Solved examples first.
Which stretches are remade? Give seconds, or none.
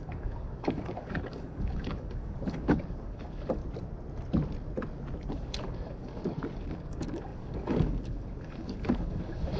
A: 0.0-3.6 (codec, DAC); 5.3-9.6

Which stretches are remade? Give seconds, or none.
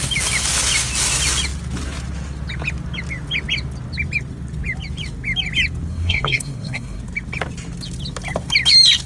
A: 5.9-7.0 (codec, SNAC)